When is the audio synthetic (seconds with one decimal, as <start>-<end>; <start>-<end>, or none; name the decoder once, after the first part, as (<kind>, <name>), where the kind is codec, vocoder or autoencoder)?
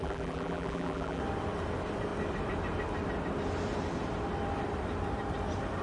0.0-1.2 (vocoder, BigVGAN v2)